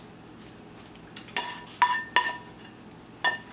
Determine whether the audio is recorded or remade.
recorded